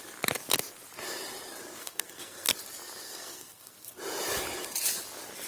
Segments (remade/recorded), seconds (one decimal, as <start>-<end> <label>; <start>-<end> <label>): 0.0-1.8 recorded; 1.8-2.5 remade; 2.5-3.0 recorded; 3.0-3.9 remade; 3.9-5.5 recorded

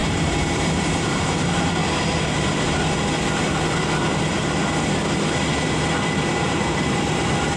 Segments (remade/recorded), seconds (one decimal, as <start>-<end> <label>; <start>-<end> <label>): 0.0-1.8 remade; 1.8-6.4 recorded; 6.4-7.6 remade

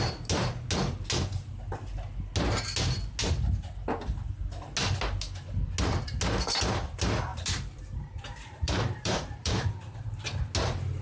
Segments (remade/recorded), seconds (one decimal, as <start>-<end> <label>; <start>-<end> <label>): 0.0-7.3 recorded; 7.3-9.7 remade; 9.7-11.0 recorded